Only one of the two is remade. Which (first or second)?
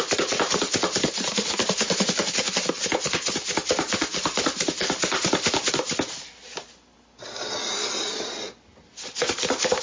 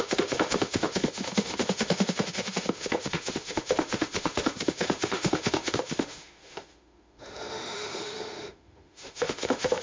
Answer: second